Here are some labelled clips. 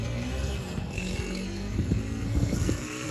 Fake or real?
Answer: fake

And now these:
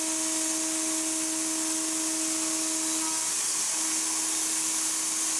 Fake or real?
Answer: real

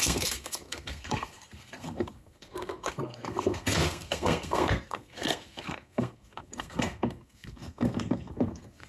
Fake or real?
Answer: fake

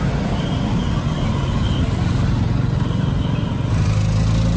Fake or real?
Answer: real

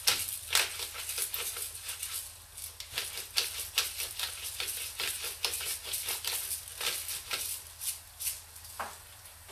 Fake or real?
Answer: real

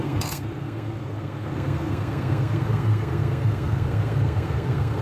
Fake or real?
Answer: fake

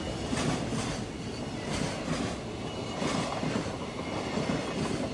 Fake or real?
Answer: real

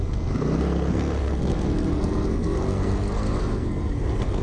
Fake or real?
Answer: fake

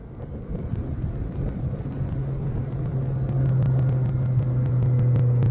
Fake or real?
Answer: real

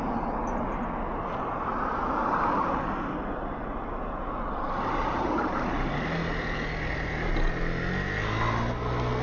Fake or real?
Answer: real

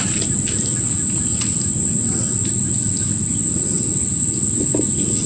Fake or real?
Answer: real